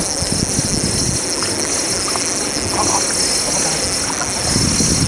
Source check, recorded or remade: recorded